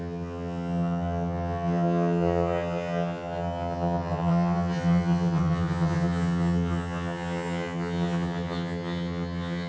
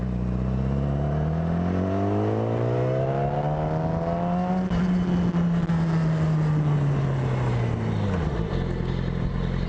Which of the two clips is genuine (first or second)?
second